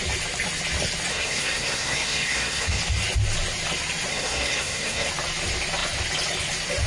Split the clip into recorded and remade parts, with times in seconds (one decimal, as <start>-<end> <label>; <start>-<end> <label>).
0.0-1.1 recorded; 1.1-2.8 remade; 2.8-4.1 recorded; 4.1-5.1 remade; 5.1-6.9 recorded